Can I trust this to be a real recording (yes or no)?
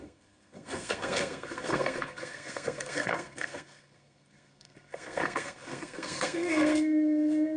no